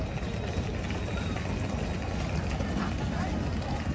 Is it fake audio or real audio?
real